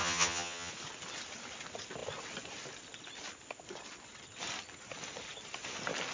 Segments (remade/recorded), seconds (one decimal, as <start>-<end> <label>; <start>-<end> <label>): 0.0-0.7 remade; 0.7-6.1 recorded